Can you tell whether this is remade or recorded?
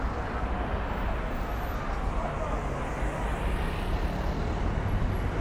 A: recorded